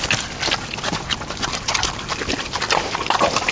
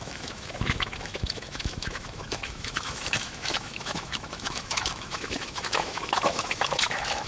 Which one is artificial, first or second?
second